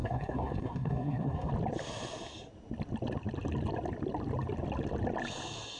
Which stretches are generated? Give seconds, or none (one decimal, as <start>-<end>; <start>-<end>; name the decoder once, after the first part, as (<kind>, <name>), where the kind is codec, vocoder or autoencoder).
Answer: 0.0-1.5 (codec, SNAC)